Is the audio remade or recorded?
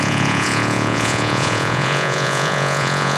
remade